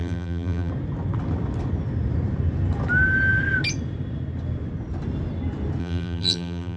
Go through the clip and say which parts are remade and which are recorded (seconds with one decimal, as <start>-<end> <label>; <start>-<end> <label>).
0.0-0.7 remade; 0.7-5.8 recorded; 5.8-6.8 remade